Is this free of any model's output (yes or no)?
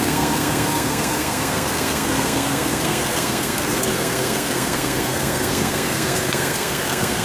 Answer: no